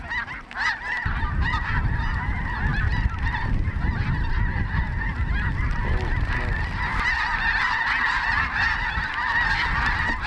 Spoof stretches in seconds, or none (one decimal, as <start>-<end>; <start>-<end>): 2.7-3.4